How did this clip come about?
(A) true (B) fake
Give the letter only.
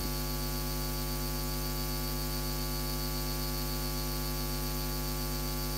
A